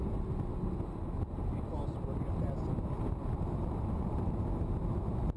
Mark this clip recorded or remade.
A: recorded